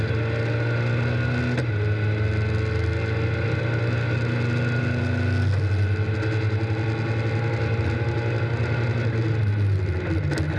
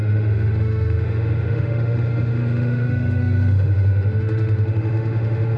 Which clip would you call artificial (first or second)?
second